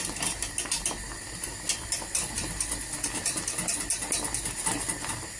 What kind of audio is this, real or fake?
real